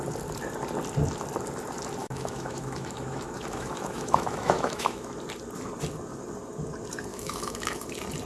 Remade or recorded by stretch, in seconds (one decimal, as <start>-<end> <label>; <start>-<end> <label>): 0.0-2.0 recorded; 2.0-5.1 remade; 5.1-7.1 recorded; 7.1-7.9 remade; 7.9-8.3 recorded